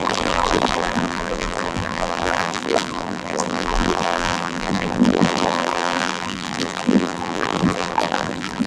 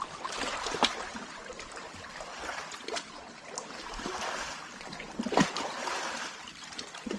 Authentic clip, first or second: second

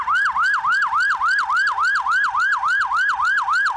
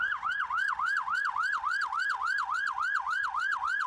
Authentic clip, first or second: first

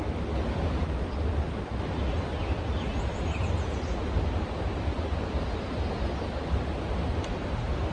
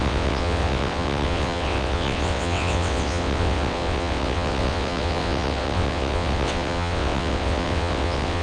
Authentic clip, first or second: first